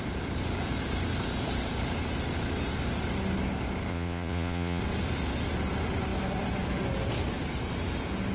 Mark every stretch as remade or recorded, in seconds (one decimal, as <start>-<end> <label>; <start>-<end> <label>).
0.0-3.9 recorded; 3.9-4.8 remade; 4.8-8.3 recorded